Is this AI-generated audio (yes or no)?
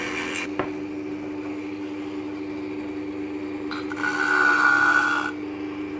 no